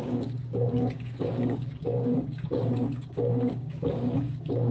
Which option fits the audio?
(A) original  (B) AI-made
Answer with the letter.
B